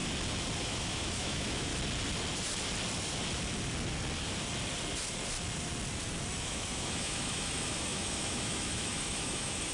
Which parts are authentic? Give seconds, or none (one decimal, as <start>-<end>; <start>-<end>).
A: 0.0-0.6; 1.7-6.4